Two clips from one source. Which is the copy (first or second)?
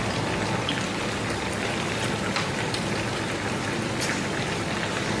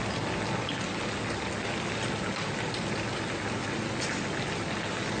first